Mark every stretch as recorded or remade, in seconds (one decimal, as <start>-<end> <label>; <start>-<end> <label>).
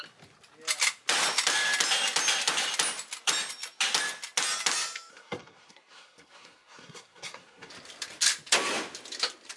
0.0-5.1 recorded; 5.1-7.7 remade; 7.7-9.6 recorded